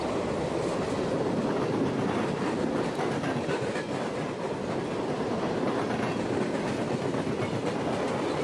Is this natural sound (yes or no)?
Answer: yes